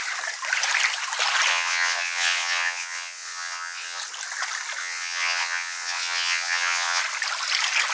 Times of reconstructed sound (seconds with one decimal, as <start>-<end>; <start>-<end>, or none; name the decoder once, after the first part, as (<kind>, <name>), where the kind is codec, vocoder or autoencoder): 1.5-4.0 (vocoder, WaveNeXt); 4.8-7.0